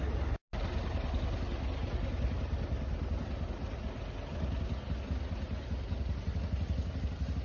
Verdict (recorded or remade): recorded